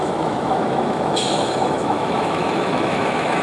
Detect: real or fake fake